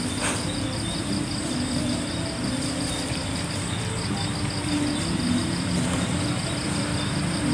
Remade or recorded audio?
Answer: recorded